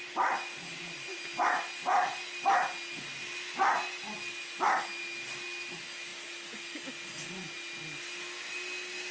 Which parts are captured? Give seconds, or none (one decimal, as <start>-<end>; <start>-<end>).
0.0-9.1